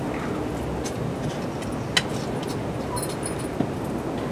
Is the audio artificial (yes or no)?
no